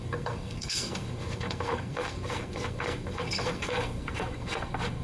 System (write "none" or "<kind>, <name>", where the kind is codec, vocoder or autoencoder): codec, SNAC